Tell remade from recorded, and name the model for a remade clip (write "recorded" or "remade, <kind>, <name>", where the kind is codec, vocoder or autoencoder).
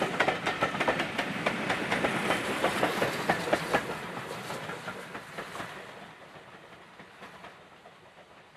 recorded